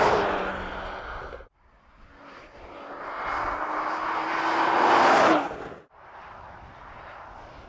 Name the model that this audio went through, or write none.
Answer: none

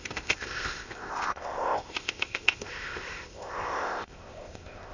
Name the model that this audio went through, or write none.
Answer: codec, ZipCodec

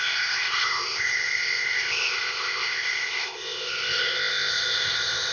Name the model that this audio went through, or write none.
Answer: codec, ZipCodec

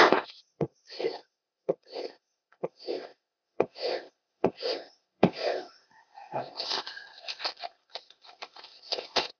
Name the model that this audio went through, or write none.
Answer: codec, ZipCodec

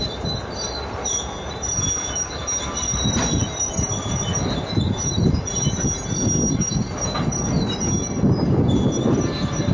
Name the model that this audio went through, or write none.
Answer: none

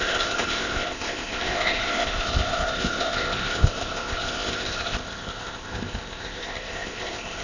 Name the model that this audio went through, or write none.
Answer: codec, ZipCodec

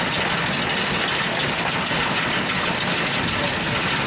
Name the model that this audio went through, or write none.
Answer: none